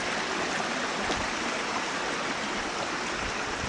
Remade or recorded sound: recorded